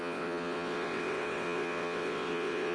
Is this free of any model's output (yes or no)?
no